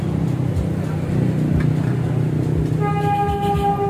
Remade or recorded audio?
recorded